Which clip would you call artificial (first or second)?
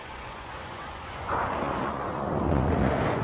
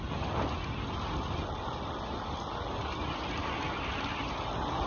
first